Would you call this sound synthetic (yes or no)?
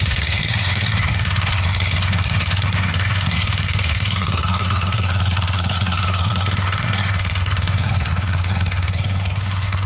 yes